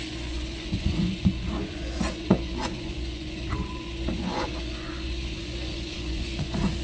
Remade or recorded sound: remade